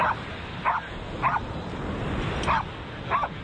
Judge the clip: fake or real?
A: real